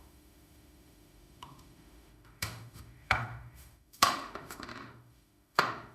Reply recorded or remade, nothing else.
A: remade